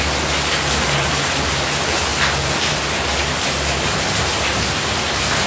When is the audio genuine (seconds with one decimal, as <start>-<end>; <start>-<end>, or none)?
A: 0.0-5.5